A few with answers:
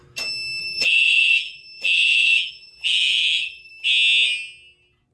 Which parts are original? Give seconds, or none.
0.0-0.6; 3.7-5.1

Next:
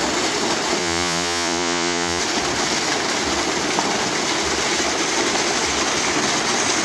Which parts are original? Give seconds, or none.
0.0-0.8; 2.2-6.8

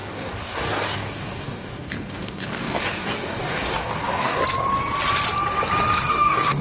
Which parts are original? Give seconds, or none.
4.4-6.1

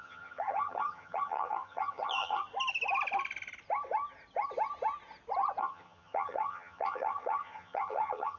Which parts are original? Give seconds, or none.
2.4-5.6

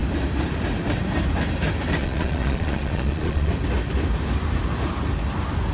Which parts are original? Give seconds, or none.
0.0-2.0; 3.5-5.7

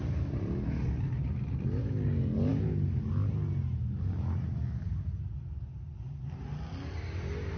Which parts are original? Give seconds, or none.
0.0-7.6

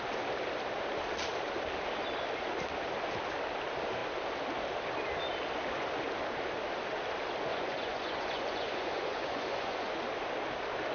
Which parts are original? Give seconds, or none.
0.0-7.5; 9.9-10.9